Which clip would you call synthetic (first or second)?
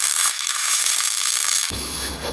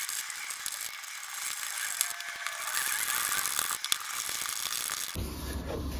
first